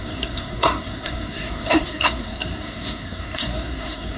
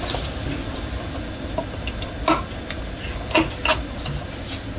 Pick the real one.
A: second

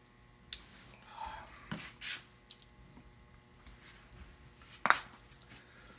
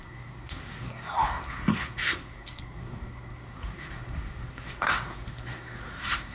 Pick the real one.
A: first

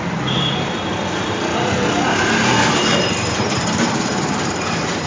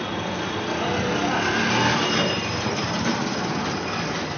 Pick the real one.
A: second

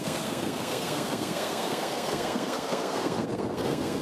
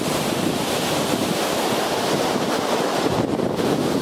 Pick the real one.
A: second